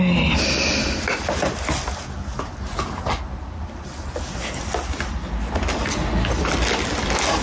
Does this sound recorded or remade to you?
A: recorded